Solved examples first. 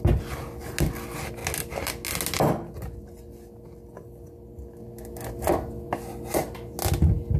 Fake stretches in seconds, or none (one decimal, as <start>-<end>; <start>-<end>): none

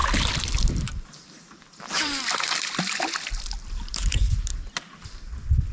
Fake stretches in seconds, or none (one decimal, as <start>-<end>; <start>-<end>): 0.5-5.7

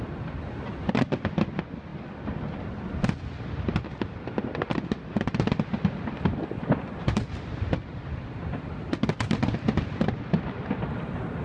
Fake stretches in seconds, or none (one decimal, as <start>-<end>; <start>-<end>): 0.0-1.9; 6.8-11.4

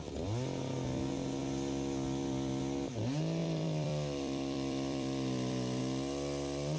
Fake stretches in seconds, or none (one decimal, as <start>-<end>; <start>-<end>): 3.4-5.8

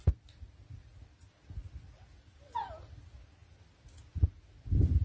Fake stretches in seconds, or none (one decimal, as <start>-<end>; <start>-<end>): none

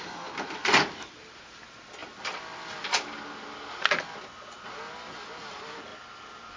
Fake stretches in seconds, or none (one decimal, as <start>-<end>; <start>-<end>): 0.0-2.0; 5.5-5.9

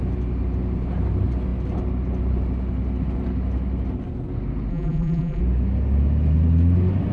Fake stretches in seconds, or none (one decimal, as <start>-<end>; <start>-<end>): 4.7-5.4

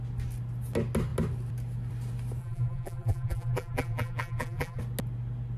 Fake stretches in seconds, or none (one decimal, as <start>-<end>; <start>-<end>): 2.4-4.8